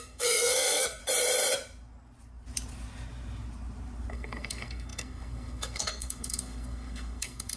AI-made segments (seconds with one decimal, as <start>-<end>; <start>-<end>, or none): 0.0-1.0; 4.1-7.6